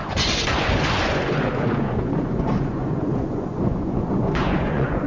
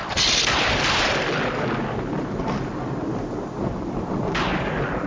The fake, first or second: first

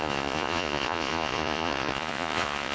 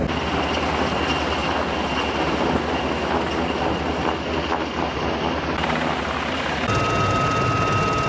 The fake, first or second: first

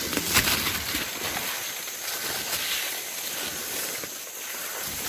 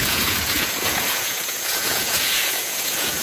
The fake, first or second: second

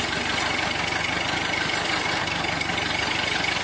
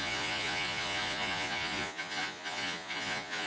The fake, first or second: second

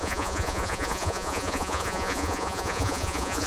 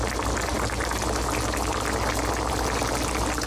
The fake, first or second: first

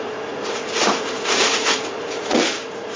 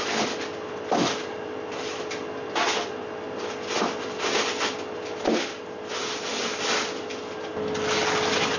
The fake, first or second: first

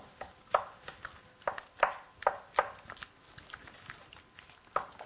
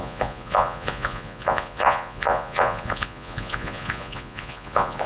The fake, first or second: second